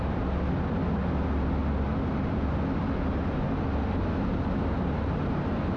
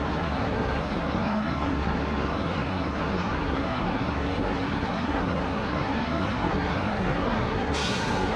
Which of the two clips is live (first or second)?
first